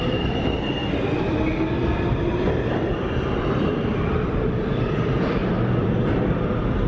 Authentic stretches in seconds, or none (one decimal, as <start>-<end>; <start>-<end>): 5.4-6.9